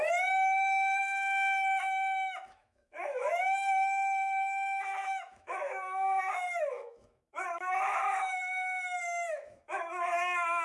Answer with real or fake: fake